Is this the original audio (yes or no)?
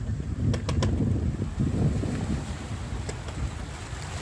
yes